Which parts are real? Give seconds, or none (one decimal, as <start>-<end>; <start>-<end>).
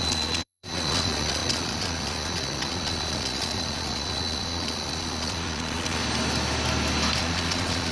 6.0-7.2